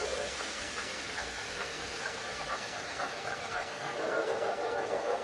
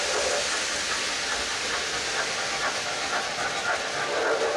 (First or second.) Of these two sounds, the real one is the second